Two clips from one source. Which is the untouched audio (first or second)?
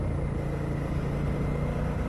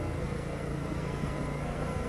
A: first